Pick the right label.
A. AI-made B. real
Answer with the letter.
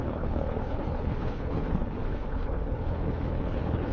A